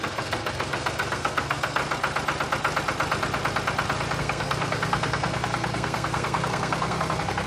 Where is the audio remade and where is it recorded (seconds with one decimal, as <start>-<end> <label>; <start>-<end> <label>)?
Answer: 0.0-1.8 remade; 1.8-4.2 recorded; 4.2-7.5 remade